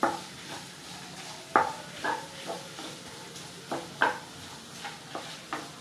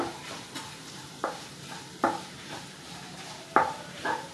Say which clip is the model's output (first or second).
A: second